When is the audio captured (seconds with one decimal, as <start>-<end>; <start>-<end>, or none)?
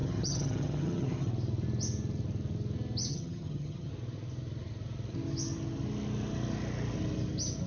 1.3-3.1; 3.9-7.7